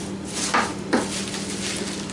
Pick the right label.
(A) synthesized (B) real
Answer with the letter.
B